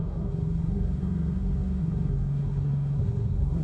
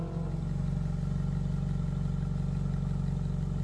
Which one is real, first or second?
second